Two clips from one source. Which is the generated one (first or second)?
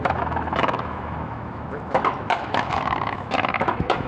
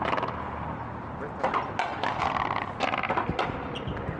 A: first